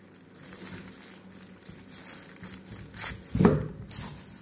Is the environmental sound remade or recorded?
recorded